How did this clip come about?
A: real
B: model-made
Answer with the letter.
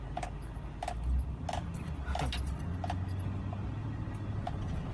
A